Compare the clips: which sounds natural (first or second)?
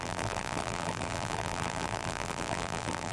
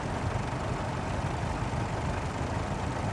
second